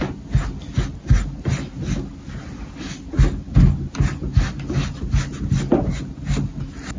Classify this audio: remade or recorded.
recorded